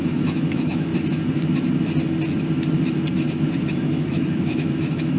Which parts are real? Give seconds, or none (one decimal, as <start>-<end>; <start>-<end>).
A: 0.9-3.8